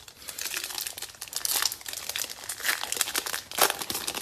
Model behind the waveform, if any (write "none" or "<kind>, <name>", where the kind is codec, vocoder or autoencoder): none